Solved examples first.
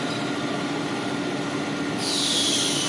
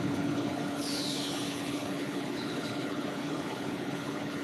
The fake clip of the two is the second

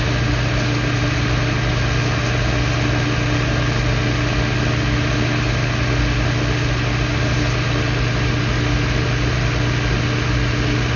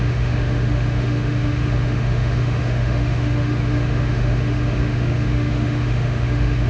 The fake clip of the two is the second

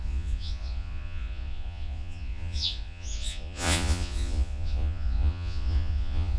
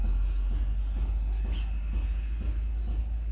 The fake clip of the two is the first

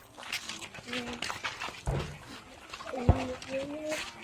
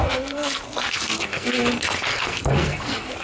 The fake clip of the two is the second